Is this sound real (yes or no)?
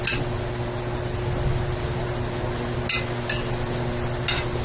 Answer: yes